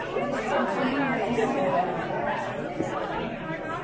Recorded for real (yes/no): yes